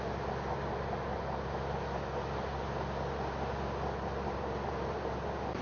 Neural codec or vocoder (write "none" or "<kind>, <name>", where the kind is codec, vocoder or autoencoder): none